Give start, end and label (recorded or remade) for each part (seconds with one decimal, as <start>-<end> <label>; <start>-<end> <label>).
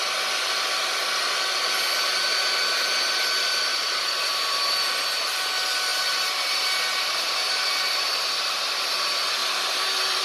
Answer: 0.0-3.7 recorded; 3.7-4.6 remade; 4.6-5.9 recorded; 5.9-8.6 remade; 8.6-9.4 recorded; 9.4-10.2 remade